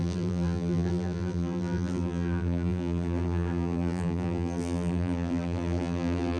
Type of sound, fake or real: fake